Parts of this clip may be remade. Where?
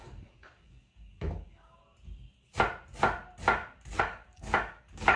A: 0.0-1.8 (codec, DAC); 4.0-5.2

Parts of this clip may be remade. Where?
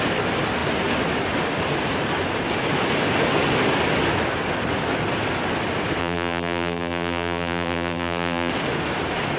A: 6.0-8.5 (vocoder, BigVGAN v2)